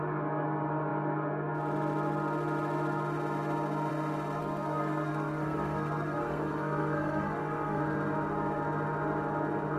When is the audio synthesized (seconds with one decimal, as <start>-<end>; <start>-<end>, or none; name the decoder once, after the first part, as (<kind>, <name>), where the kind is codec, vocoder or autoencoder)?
4.4-7.8 (codec, SNAC)